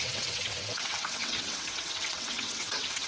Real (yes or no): no